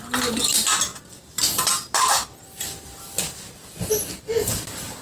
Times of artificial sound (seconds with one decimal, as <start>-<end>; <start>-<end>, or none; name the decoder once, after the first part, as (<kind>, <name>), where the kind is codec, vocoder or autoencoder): none